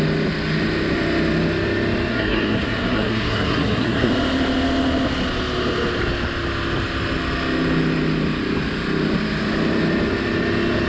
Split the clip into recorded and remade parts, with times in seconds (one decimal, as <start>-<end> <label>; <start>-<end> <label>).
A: 0.0-2.1 recorded; 2.1-4.1 remade; 4.1-10.9 recorded